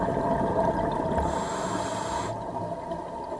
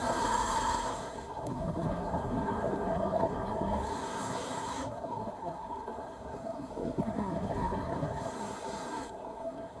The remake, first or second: second